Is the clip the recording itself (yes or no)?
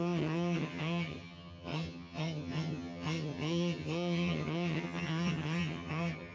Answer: no